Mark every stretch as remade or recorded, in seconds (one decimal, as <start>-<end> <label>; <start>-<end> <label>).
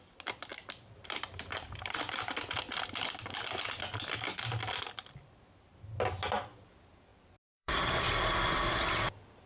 0.0-0.5 recorded; 0.5-2.3 remade; 2.3-7.1 recorded; 7.1-8.1 remade; 8.1-9.5 recorded